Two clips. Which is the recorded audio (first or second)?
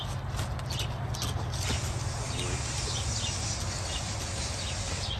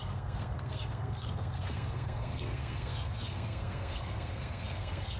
first